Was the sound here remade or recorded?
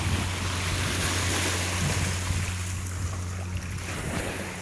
recorded